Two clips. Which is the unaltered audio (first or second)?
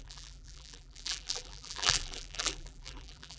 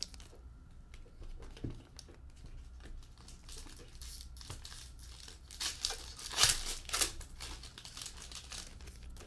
second